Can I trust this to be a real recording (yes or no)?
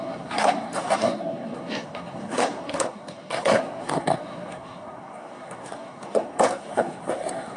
no